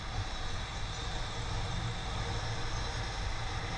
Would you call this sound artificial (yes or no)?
no